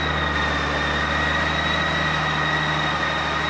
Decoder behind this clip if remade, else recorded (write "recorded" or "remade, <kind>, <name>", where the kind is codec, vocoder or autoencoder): recorded